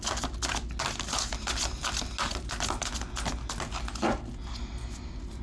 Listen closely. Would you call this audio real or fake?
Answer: real